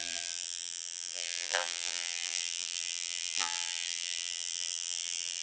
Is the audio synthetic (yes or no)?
yes